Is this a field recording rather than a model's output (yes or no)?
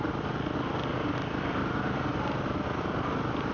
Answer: no